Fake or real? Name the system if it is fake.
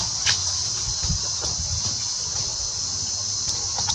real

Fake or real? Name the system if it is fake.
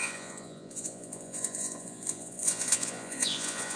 fake, vocoder, Vocos